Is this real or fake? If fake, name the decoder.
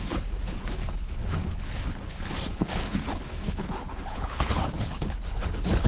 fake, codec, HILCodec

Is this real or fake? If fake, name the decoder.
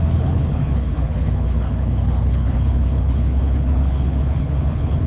fake, codec, HILCodec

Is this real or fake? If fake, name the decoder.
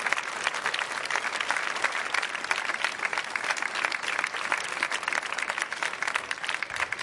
real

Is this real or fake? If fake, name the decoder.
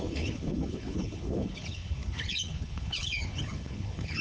fake, codec, HILCodec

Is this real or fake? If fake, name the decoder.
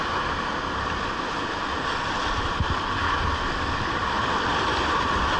real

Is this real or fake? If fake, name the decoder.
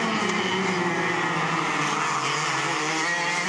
real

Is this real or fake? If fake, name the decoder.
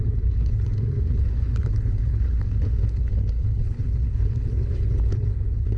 fake, codec, HILCodec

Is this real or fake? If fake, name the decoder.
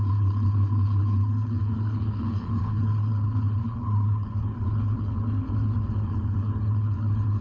fake, codec, HILCodec